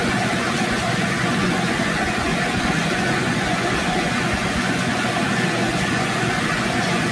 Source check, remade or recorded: remade